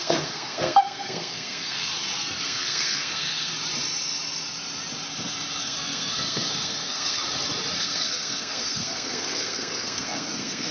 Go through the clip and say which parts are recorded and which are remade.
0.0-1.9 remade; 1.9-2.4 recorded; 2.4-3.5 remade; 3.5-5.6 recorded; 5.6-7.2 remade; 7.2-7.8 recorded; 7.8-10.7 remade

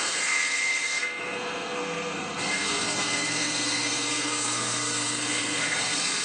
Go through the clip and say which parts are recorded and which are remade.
0.0-6.2 remade